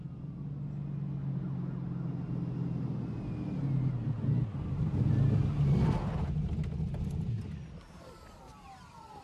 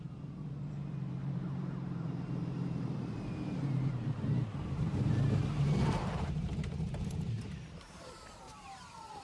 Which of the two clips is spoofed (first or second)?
second